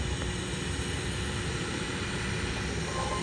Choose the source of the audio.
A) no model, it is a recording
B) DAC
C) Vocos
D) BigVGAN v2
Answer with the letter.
A